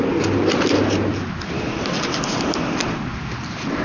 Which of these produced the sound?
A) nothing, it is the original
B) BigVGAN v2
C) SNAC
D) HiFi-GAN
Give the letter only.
A